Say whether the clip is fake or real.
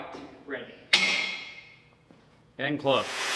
fake